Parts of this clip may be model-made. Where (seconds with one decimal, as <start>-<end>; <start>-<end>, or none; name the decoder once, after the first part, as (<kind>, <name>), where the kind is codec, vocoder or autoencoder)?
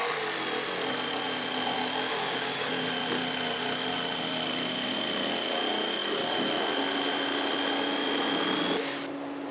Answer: 2.1-2.7 (codec, DAC)